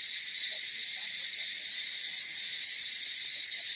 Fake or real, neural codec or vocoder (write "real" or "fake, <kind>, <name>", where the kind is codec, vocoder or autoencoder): real